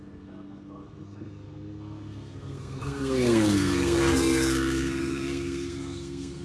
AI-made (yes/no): yes